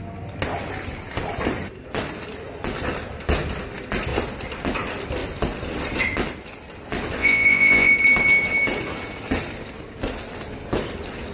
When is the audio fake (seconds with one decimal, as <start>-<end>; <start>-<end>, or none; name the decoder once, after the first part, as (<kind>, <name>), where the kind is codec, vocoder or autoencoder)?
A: 7.2-7.9 (vocoder, Vocos)